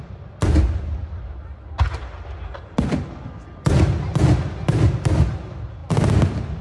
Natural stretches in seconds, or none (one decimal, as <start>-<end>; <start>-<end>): 0.0-6.6